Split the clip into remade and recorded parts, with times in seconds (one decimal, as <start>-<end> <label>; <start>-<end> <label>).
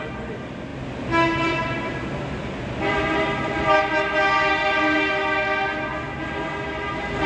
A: 0.0-7.3 recorded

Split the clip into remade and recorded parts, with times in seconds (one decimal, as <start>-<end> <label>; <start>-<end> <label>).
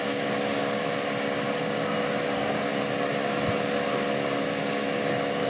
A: 0.0-0.8 remade; 0.8-1.6 recorded; 1.6-2.7 remade; 2.7-4.6 recorded; 4.6-5.5 remade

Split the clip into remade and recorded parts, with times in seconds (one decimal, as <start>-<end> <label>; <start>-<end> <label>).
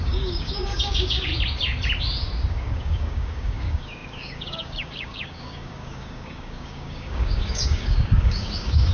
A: 0.0-1.3 remade; 1.3-2.5 recorded; 2.5-8.9 remade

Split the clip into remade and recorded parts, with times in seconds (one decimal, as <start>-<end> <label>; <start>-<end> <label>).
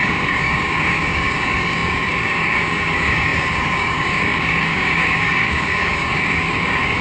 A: 0.0-7.0 remade